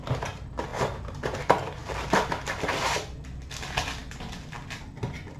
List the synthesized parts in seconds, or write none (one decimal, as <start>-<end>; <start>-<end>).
none